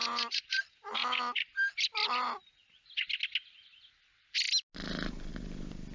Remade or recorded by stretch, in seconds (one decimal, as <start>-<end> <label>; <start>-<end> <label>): 0.0-5.9 recorded